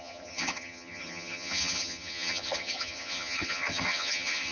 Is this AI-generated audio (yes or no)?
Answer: yes